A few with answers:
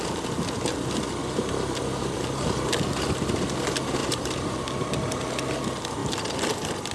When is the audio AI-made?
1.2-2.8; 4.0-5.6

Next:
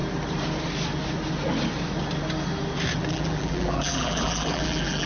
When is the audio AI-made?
3.1-5.1

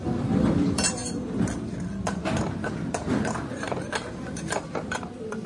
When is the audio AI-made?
0.0-1.0; 4.3-5.5

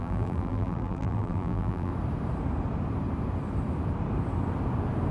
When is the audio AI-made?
0.0-1.9

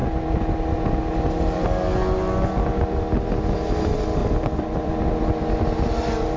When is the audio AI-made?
4.2-4.9

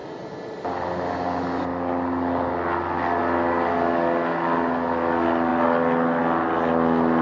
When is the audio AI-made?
none